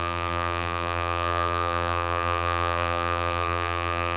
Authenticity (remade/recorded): remade